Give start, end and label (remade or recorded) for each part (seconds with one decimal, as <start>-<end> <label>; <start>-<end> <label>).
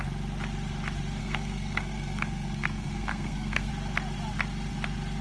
0.0-1.2 recorded; 1.2-3.7 remade; 3.7-5.2 recorded